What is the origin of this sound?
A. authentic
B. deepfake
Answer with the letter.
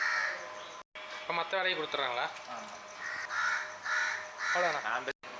A